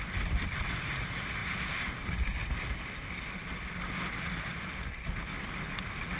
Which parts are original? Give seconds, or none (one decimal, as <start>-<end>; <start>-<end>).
1.4-4.3; 5.3-6.2